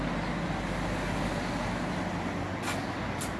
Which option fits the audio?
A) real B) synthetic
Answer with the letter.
A